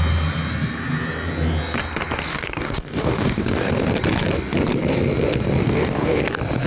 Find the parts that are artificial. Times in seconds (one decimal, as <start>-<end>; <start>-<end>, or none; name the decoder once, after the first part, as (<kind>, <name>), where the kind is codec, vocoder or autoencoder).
2.3-3.7 (codec, DAC); 5.6-6.2